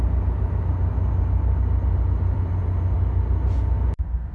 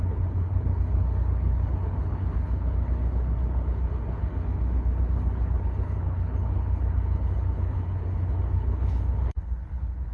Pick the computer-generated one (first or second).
second